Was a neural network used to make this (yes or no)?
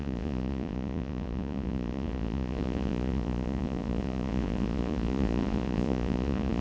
yes